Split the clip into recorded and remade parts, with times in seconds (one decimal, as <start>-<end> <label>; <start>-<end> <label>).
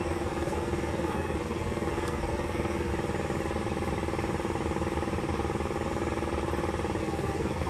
0.0-2.9 remade; 2.9-7.0 recorded; 7.0-7.7 remade